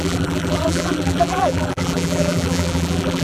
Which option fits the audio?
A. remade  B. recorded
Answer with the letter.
A